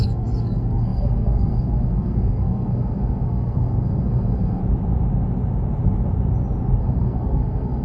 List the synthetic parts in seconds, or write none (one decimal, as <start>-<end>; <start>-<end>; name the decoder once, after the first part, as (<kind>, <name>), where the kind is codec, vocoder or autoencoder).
0.0-4.6 (codec, SNAC); 6.8-7.8